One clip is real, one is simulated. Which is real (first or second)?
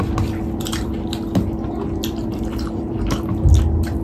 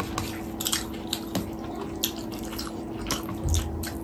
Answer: second